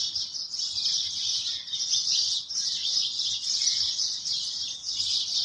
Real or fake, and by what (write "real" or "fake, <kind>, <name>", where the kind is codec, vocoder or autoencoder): real